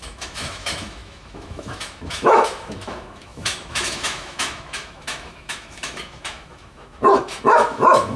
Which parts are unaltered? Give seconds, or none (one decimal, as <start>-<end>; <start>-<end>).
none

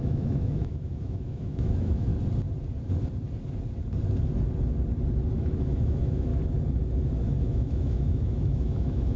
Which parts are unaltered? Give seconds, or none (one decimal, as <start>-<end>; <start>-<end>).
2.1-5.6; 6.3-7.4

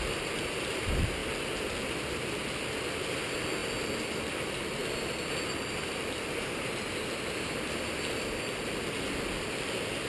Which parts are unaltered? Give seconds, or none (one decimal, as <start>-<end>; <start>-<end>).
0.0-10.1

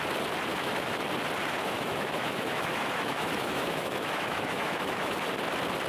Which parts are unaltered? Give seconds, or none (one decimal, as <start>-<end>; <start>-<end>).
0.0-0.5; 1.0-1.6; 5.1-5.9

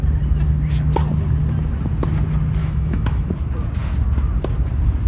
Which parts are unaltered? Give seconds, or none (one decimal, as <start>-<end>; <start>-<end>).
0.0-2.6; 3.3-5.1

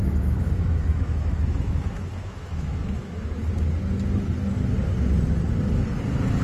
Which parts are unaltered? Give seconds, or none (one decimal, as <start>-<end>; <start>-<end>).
3.4-6.4